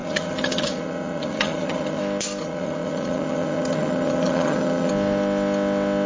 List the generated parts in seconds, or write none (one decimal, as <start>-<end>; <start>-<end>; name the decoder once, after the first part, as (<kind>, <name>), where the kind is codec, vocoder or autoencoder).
0.0-2.0 (vocoder, HiFi-GAN); 2.4-4.9